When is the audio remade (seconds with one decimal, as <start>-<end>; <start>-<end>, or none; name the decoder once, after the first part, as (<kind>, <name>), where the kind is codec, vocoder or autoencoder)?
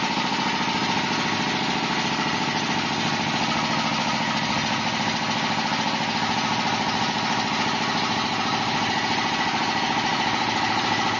none